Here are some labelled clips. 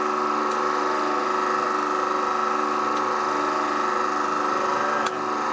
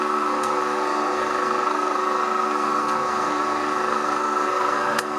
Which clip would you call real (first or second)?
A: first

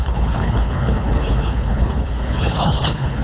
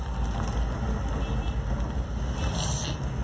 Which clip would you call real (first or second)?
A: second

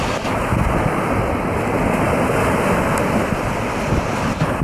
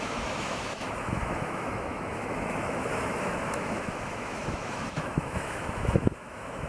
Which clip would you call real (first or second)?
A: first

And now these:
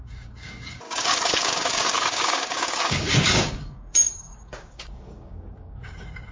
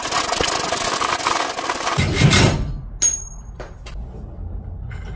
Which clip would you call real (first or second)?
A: second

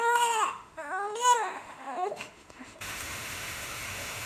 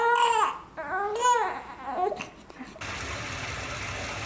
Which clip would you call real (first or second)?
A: second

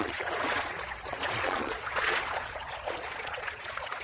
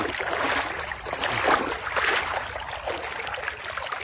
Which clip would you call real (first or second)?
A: second